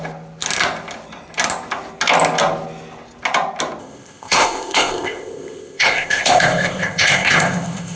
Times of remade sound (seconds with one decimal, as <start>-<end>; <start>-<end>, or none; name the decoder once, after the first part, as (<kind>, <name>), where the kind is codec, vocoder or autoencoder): 3.8-8.0 (codec, ZipCodec)